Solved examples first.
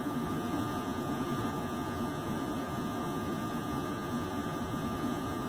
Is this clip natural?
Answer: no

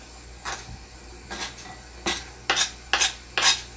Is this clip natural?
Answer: yes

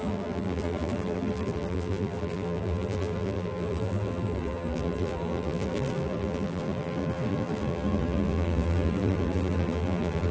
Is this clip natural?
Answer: no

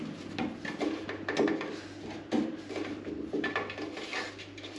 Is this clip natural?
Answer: yes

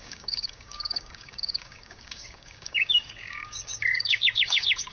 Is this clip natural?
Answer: no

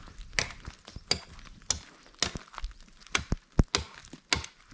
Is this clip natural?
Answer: yes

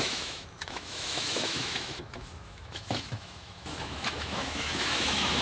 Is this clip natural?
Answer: no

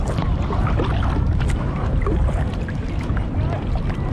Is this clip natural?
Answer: yes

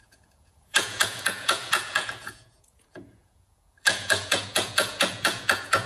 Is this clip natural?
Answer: no